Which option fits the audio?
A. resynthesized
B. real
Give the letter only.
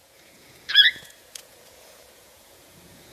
A